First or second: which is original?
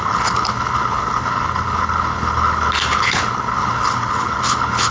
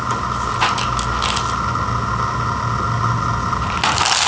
second